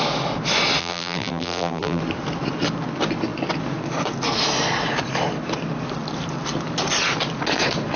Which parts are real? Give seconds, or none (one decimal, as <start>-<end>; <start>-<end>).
0.0-0.8; 2.0-8.0

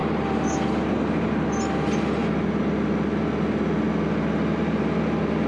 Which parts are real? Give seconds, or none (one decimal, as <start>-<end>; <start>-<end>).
0.0-5.5

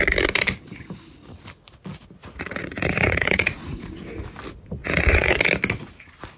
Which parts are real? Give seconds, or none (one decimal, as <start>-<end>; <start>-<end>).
0.0-2.2; 3.8-4.8; 5.4-6.4

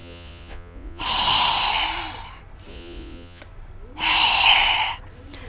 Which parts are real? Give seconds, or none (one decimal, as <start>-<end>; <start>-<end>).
1.0-2.7; 3.4-5.5

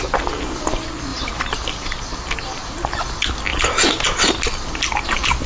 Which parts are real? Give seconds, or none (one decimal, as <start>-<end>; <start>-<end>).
0.0-1.1; 2.0-5.5